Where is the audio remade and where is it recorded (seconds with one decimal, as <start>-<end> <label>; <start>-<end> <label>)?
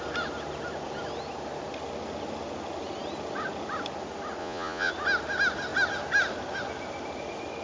0.0-4.4 recorded; 4.4-4.9 remade; 4.9-7.6 recorded